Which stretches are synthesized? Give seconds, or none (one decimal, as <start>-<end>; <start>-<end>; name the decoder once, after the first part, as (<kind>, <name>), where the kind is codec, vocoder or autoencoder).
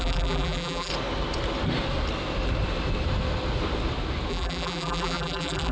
0.0-0.9 (vocoder, BigVGAN v2); 4.3-5.7